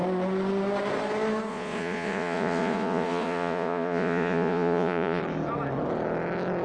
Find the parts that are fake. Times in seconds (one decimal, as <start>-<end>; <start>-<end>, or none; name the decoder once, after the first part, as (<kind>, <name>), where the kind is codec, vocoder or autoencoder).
1.5-5.2 (vocoder, Vocos)